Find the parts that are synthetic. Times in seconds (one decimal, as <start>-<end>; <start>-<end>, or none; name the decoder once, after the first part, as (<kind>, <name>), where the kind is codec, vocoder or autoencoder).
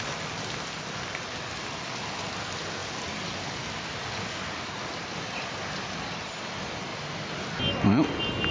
none